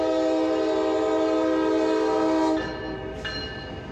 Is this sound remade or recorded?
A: recorded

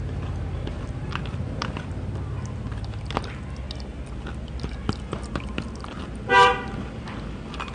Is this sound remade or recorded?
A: recorded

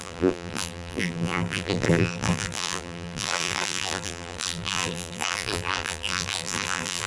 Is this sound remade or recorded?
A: remade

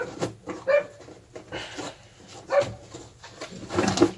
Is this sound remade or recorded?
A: recorded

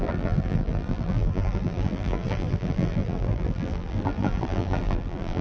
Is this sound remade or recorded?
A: remade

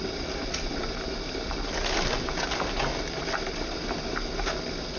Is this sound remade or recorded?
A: recorded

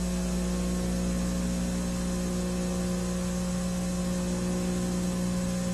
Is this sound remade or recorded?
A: recorded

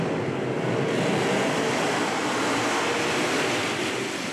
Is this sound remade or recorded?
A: remade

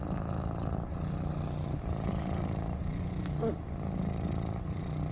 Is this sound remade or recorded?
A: recorded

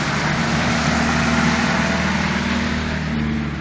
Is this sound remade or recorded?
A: recorded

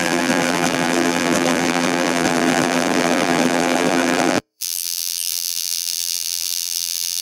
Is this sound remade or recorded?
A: remade